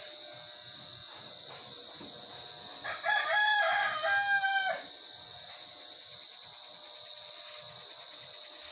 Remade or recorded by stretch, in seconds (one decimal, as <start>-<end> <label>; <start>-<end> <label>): 0.0-8.7 recorded